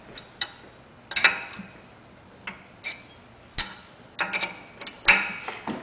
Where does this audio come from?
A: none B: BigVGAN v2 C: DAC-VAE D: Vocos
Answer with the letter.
A